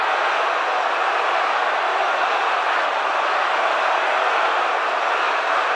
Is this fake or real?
real